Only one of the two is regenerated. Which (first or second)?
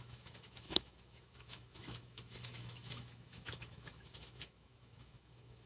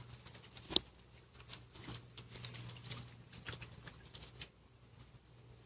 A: first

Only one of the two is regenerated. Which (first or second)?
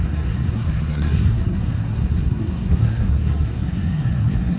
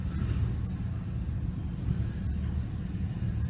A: first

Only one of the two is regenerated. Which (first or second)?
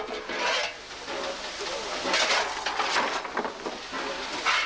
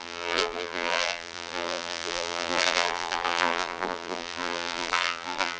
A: second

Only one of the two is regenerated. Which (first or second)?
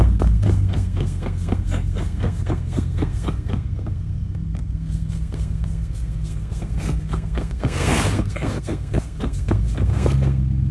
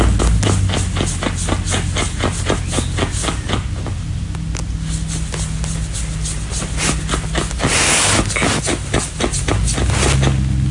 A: first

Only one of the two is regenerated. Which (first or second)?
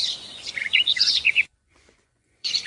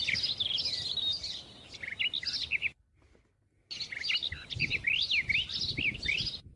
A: first